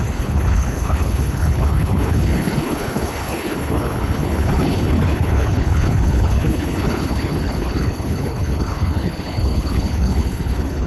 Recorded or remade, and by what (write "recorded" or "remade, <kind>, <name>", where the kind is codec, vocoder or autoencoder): remade, codec, HILCodec